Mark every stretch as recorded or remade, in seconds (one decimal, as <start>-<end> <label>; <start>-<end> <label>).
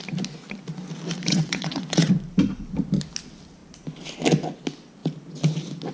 0.0-1.3 recorded; 1.3-2.1 remade; 2.1-5.9 recorded